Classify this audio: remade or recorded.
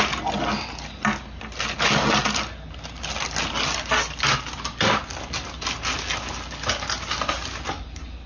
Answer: recorded